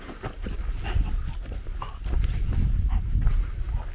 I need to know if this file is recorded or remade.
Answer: recorded